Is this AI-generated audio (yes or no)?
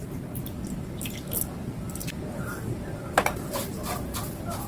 no